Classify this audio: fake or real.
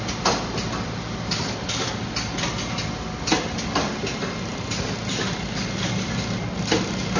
real